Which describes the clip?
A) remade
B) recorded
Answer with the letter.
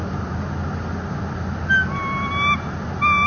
B